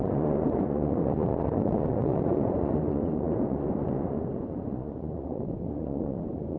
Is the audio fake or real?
fake